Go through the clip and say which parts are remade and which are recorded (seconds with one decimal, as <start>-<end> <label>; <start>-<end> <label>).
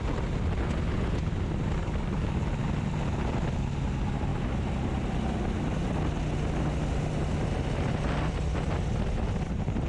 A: 0.0-1.8 recorded; 1.8-2.4 remade; 2.4-9.9 recorded